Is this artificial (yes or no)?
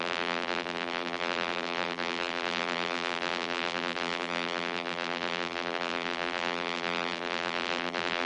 yes